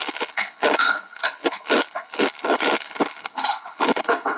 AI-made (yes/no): yes